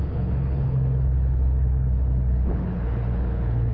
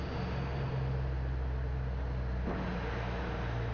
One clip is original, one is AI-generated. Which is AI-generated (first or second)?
first